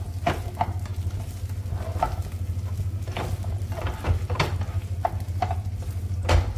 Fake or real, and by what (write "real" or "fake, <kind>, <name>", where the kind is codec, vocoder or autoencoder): real